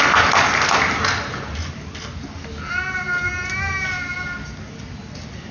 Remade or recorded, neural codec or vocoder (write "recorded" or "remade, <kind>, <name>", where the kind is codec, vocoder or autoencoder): recorded